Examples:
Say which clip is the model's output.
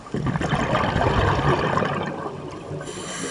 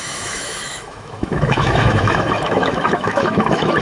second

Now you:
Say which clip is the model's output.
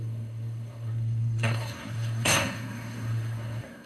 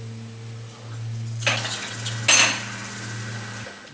first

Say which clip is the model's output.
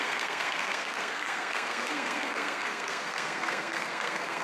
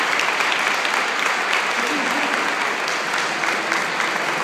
first